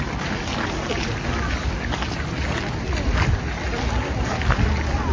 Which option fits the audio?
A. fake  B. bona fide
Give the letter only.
B